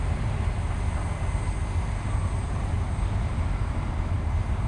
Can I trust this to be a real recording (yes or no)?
yes